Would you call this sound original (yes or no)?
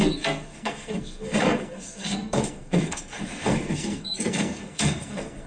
no